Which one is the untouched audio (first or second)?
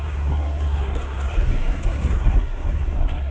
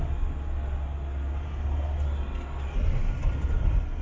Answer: second